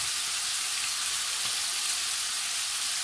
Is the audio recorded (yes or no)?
yes